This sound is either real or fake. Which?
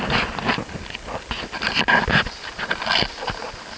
real